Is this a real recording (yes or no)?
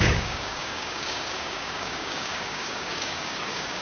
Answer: no